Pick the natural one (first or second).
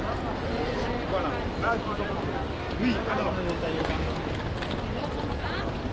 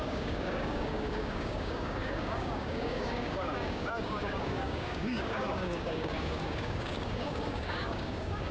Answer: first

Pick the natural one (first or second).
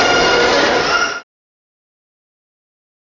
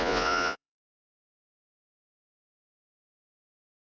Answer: first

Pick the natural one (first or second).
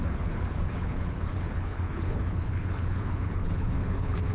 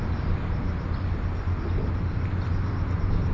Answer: second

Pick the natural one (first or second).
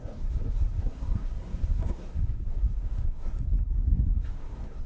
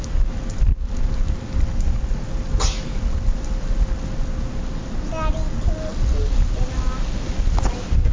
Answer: second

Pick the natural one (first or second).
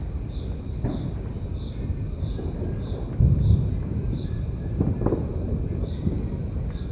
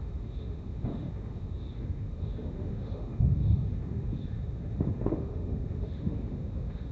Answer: first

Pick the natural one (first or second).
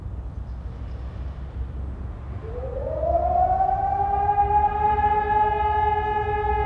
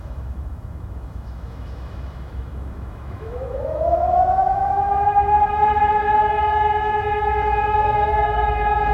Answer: first